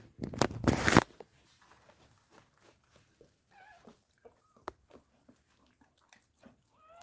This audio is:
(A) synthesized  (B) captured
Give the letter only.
B